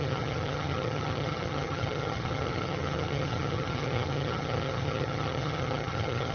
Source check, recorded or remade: remade